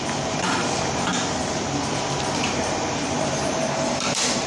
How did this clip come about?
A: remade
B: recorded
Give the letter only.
A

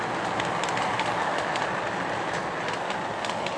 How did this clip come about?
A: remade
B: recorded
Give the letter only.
B